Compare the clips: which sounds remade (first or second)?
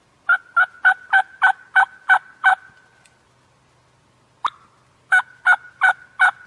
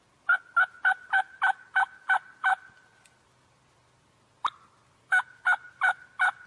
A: second